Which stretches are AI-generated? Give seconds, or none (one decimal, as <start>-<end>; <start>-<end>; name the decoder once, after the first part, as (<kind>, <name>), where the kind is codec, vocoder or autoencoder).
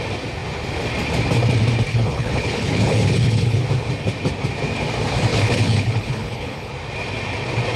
1.9-3.6 (codec, HILCodec); 5.3-6.7